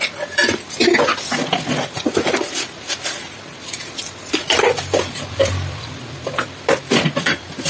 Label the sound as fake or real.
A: fake